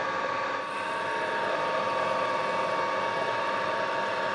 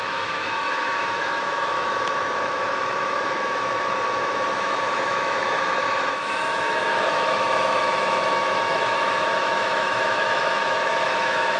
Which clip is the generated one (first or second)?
second